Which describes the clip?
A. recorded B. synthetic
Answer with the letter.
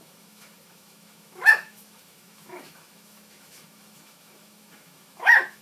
B